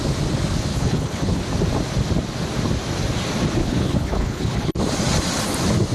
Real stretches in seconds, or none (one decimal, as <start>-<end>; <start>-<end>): 0.0-0.7; 1.4-3.6; 4.8-5.9